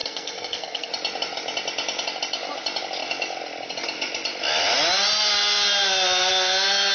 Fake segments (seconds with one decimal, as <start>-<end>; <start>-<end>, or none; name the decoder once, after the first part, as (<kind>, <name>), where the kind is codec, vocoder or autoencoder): 0.0-0.9 (codec, SNAC)